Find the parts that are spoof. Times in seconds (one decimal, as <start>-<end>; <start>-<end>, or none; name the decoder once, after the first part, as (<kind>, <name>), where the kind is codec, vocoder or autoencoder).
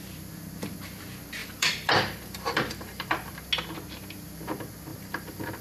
1.4-3.3 (vocoder, BigVGAN v2); 4.9-5.6